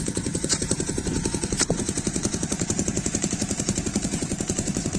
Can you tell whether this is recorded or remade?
remade